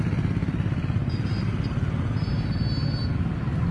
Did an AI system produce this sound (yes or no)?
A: no